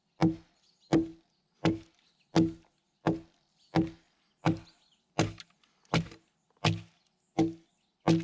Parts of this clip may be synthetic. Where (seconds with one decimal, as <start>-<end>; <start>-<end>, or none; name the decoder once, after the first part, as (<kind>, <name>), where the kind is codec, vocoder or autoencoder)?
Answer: none